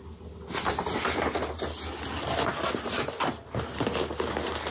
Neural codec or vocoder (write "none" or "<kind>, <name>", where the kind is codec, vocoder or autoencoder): none